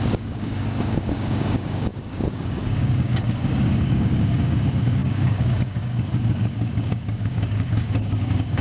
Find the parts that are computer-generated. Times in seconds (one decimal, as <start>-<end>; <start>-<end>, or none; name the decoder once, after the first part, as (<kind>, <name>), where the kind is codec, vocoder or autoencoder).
0.0-8.6 (codec, DAC)